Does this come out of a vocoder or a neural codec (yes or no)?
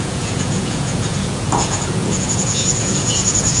yes